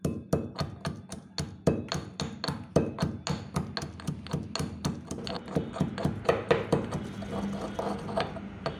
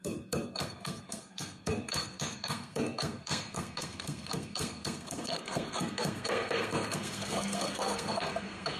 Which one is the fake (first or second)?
second